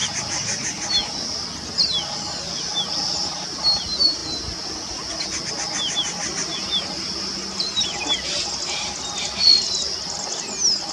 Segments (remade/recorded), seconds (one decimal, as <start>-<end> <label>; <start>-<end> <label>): 0.0-0.9 remade; 0.9-10.9 recorded